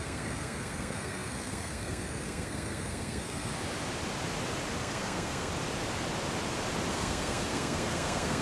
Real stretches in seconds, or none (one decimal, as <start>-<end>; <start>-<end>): 3.5-4.8; 5.5-6.9